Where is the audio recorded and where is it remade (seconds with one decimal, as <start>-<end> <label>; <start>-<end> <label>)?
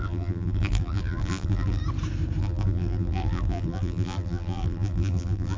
0.0-1.8 remade; 1.8-2.4 recorded; 2.4-5.6 remade